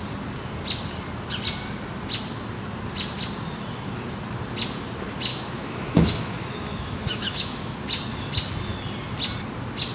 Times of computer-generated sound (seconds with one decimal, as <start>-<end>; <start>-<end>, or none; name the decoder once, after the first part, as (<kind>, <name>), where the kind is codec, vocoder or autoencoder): 5.3-7.7 (autoencoder, DAC-VAE)